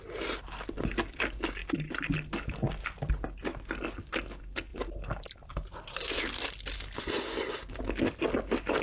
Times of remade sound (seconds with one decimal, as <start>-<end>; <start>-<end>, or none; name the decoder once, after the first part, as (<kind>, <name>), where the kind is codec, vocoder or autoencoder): 4.7-6.2 (vocoder, BigVGAN v2)